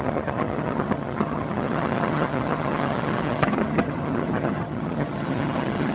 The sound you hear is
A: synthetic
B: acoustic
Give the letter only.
A